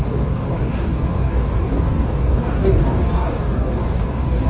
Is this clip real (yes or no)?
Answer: no